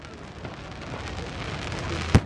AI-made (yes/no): no